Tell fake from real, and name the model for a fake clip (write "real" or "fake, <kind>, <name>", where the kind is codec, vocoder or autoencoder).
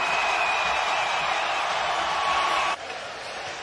fake, vocoder, BigVGAN v2